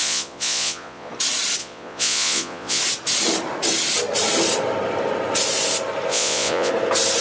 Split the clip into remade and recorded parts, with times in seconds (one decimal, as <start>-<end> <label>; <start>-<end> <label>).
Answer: 0.0-1.1 remade; 1.1-1.6 recorded; 1.6-2.8 remade; 2.8-6.1 recorded; 6.1-6.7 remade; 6.7-7.2 recorded